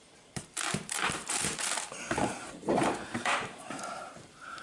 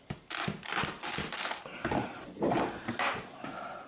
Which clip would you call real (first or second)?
second